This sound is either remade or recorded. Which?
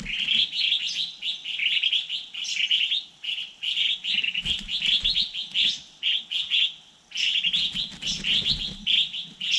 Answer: recorded